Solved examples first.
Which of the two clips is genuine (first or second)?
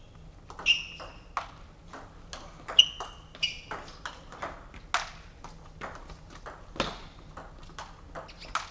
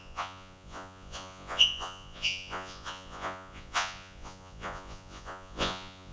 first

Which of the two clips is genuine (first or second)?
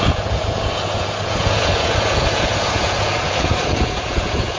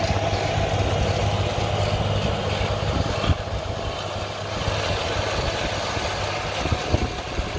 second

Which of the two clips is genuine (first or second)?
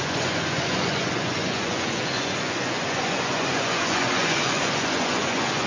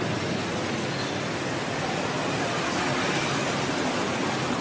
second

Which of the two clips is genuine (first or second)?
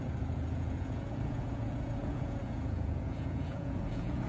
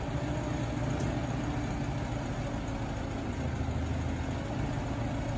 second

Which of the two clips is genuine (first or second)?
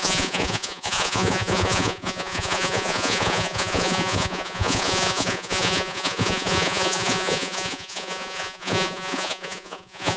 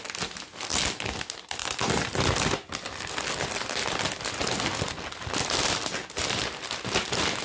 second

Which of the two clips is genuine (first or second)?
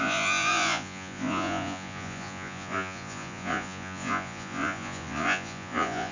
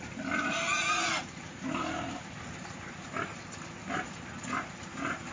second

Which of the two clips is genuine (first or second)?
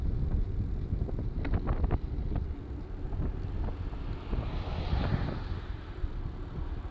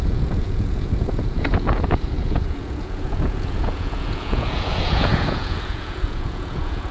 first